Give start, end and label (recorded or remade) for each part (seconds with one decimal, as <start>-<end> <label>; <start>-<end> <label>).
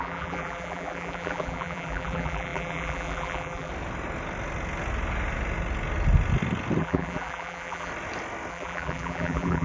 0.0-3.7 remade; 3.7-6.8 recorded; 6.8-7.9 remade; 7.9-8.5 recorded; 8.5-9.6 remade